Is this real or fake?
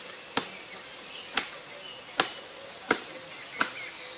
real